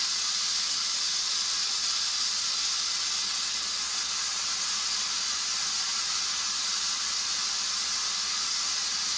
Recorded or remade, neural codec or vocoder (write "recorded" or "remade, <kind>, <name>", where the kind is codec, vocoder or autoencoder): recorded